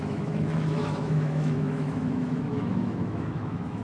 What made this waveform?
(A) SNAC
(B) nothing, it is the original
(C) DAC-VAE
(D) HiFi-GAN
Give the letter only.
C